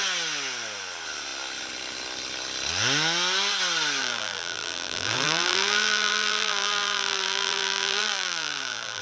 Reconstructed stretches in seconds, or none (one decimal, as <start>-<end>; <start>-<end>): 4.0-9.0